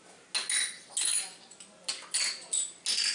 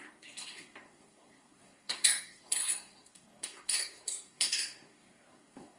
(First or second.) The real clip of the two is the first